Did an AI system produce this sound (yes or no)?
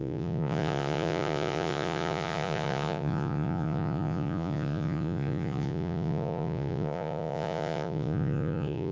yes